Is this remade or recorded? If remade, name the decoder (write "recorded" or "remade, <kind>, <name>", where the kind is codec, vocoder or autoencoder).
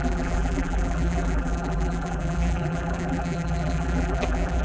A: remade, vocoder, BigVGAN v2